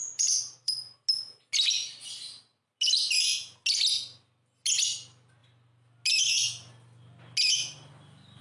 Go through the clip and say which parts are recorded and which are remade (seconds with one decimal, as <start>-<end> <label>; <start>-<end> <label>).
0.0-0.7 remade; 0.7-8.4 recorded